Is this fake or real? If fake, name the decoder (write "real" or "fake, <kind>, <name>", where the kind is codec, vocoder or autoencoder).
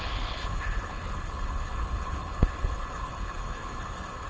fake, codec, HILCodec